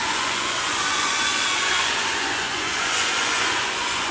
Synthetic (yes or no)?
yes